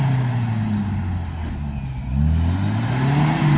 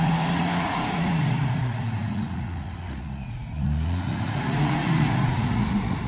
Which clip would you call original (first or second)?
first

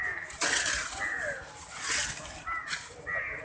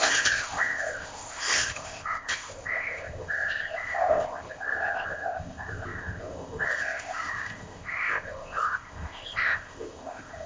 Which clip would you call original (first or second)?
first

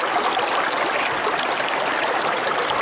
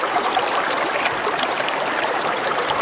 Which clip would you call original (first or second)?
first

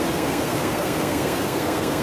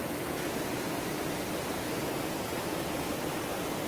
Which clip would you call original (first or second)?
second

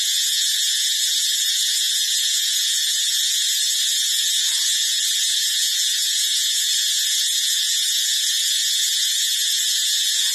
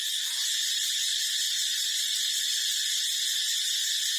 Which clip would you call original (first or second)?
second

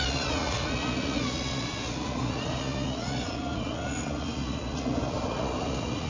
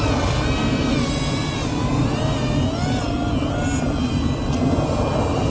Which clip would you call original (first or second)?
second